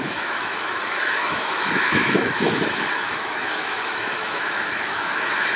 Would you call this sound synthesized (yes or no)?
yes